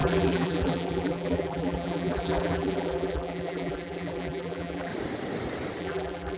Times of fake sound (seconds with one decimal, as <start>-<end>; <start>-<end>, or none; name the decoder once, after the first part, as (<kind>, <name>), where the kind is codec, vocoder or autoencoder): 0.0-4.9 (vocoder, BigVGAN v2); 5.8-6.4